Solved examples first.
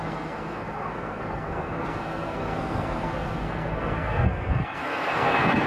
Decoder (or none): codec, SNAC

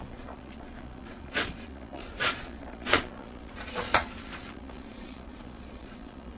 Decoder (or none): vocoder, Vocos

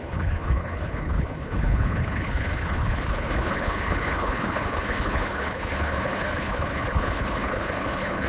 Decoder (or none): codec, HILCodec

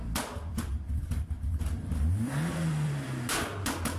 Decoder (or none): vocoder, BigVGAN v2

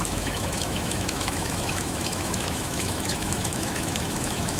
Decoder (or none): autoencoder, DAC-VAE